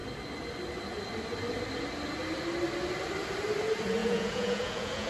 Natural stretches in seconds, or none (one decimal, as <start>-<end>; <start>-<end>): 0.0-4.0